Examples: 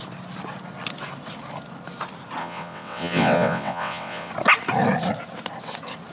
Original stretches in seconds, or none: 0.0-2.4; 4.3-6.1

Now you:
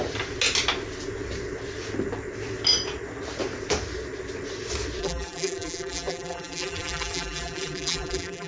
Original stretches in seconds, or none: 0.0-5.0

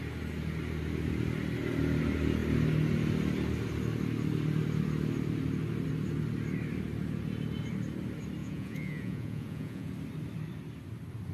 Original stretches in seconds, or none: 0.0-8.4; 9.9-11.3

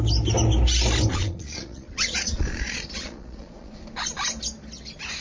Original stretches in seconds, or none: 0.0-1.1; 3.7-5.2

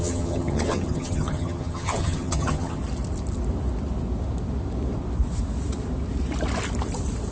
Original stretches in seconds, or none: 2.8-7.3